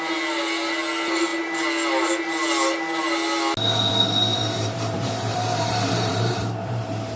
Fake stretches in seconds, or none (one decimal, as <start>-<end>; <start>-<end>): 4.3-7.2